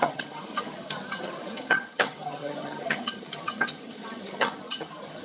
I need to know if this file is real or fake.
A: fake